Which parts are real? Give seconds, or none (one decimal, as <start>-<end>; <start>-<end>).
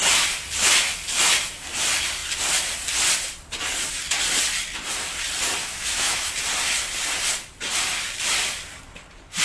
0.0-5.6; 6.3-9.4